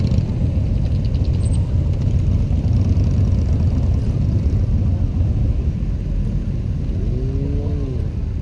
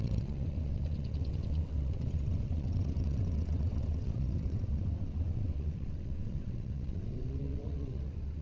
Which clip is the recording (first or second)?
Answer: first